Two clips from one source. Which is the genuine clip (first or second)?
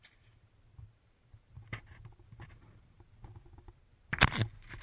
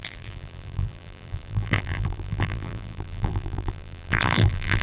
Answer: first